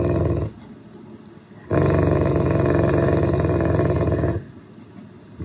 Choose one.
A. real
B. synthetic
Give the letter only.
A